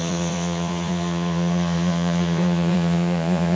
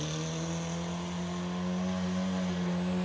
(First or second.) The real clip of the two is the second